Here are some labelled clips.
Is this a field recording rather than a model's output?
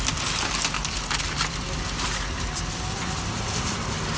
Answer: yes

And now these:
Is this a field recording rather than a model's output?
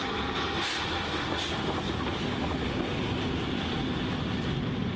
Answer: yes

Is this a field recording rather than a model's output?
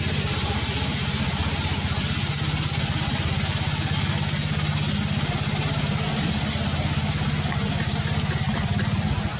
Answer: yes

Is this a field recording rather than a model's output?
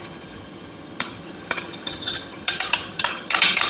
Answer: no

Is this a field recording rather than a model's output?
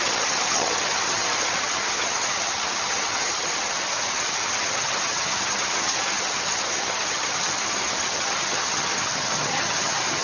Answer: no